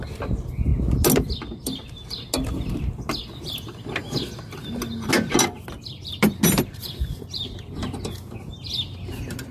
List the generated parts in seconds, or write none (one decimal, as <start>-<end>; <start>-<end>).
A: none